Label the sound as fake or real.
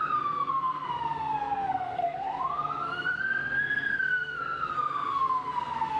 fake